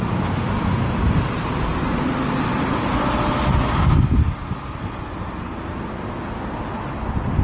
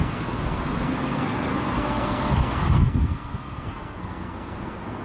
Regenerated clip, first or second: second